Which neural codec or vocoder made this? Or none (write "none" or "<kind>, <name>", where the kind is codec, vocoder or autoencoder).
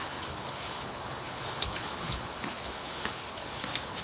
codec, HILCodec